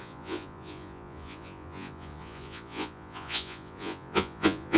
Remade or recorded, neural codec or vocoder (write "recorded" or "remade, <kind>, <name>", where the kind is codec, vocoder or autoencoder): remade, vocoder, Vocos